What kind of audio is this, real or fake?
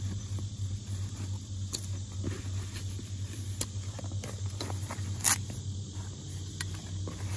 real